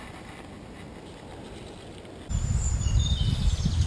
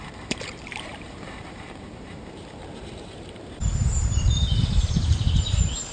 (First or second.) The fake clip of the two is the second